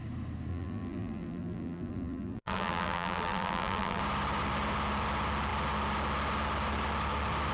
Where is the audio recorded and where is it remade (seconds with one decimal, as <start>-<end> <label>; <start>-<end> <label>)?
0.0-0.5 recorded; 0.5-4.0 remade; 4.0-7.5 recorded